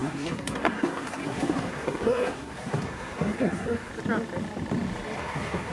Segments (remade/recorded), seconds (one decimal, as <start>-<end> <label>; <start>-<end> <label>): 0.0-3.9 remade; 3.9-5.2 recorded; 5.2-5.7 remade